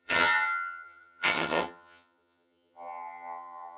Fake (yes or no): yes